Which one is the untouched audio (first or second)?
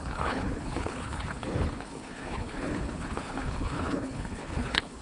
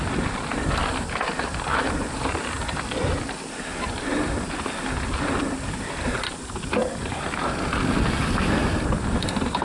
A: second